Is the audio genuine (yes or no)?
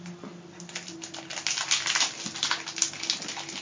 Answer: yes